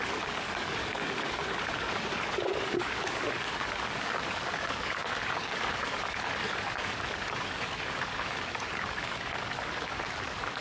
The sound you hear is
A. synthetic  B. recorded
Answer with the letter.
A